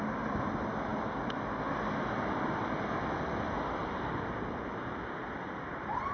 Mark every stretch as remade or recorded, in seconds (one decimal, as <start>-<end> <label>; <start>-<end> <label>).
0.0-3.8 recorded; 3.8-5.2 remade; 5.2-6.1 recorded